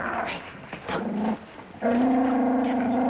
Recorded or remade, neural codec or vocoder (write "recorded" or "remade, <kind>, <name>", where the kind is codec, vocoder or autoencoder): recorded